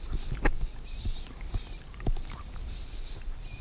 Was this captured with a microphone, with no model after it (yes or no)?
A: yes